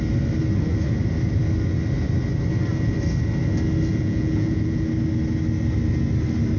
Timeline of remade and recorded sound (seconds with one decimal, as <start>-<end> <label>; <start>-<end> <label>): 0.0-3.9 recorded; 3.9-4.9 remade; 4.9-6.6 recorded